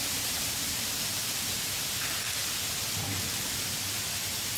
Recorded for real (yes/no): yes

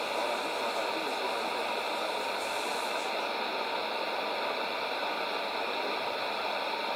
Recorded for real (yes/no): yes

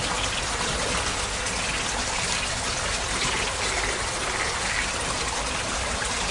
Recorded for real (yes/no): yes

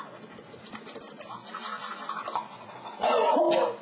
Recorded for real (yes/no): yes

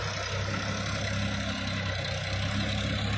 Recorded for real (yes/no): yes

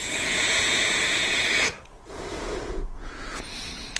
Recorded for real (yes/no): no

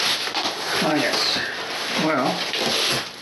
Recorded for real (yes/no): yes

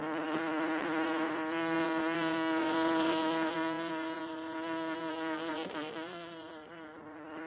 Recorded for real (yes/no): no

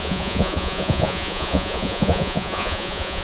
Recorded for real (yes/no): no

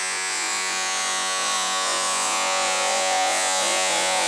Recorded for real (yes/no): no